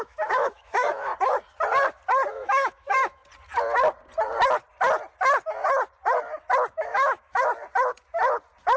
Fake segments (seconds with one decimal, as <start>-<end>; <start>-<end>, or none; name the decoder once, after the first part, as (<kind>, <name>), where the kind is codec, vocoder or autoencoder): 0.0-1.1 (autoencoder, DAC-VAE); 2.3-3.2; 6.7-7.5